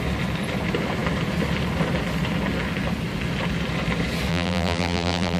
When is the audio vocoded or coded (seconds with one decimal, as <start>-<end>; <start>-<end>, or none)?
4.3-5.4